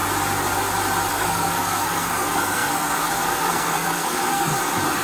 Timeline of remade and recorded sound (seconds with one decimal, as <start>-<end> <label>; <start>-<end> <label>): 0.0-1.1 recorded; 1.1-4.5 remade; 4.5-5.0 recorded

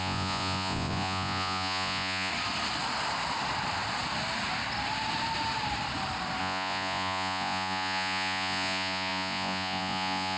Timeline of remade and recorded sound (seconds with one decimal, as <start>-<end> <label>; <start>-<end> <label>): 0.0-2.3 remade; 2.3-6.4 recorded; 6.4-10.4 remade

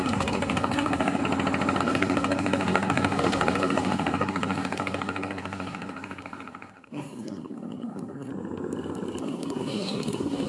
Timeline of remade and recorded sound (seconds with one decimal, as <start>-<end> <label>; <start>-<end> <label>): 0.0-1.2 remade; 1.2-1.8 recorded; 1.8-8.3 remade; 8.3-9.2 recorded; 9.2-10.5 remade

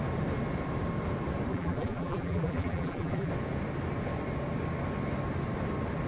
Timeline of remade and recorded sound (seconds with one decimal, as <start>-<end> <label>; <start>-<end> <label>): 0.0-1.5 recorded; 1.5-3.3 remade; 3.3-6.1 recorded

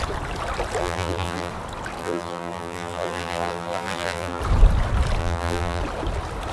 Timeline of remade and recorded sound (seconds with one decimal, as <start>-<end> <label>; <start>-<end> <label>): 0.0-0.8 recorded; 0.8-1.5 remade; 1.5-2.0 recorded; 2.0-4.4 remade; 4.4-5.2 recorded; 5.2-5.8 remade; 5.8-6.5 recorded